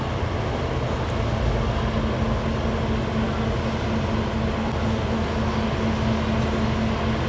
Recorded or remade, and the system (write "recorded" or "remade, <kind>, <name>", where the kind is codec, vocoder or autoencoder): recorded